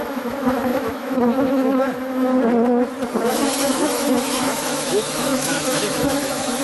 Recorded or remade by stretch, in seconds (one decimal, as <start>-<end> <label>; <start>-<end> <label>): 0.0-2.3 remade; 2.3-3.3 recorded; 3.3-6.6 remade